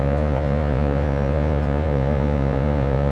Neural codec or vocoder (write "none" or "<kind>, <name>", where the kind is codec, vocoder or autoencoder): vocoder, Vocos